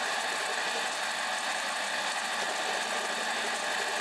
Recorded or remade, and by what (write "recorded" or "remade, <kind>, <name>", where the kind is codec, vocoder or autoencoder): recorded